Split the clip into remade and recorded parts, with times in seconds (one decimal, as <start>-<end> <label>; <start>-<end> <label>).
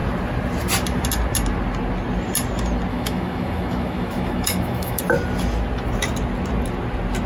0.0-2.9 recorded; 2.9-5.0 remade; 5.0-7.3 recorded